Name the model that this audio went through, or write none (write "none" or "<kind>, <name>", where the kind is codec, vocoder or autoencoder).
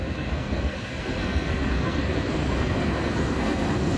codec, SNAC